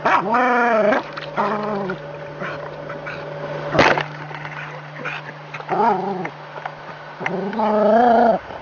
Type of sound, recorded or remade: recorded